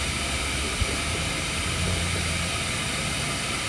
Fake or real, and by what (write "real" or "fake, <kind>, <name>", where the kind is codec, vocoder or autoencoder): fake, vocoder, BigVGAN v2